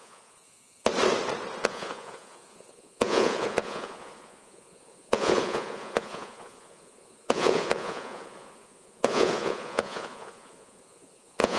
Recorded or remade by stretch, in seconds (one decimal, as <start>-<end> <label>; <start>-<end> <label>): 0.0-0.9 remade; 0.9-1.6 recorded; 1.6-11.6 remade